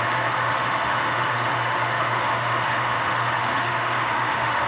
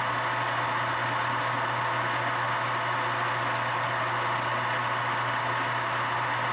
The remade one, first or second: first